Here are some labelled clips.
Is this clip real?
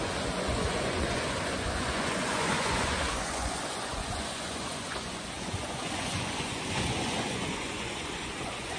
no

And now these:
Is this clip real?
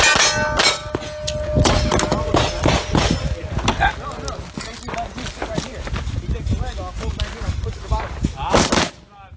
yes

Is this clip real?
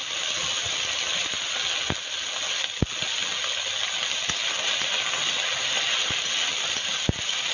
yes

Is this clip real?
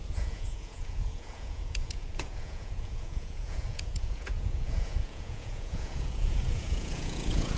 no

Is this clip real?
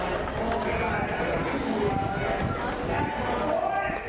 yes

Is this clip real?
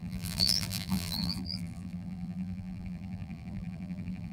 no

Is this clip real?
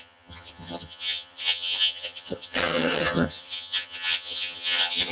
no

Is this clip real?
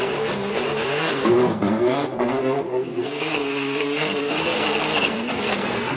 no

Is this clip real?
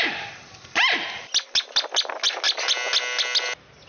yes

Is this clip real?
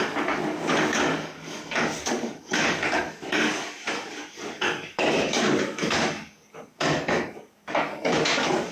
no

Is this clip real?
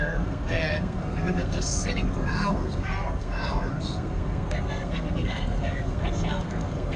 no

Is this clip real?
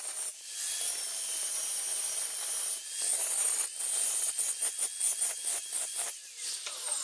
yes